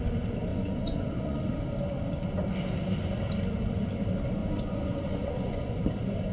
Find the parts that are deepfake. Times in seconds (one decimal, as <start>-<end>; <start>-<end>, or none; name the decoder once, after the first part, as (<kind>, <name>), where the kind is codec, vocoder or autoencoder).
0.5-1.4 (vocoder, Vocos); 4.4-5.7